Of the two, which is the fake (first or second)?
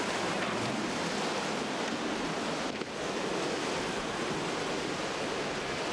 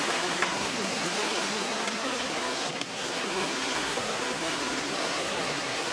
second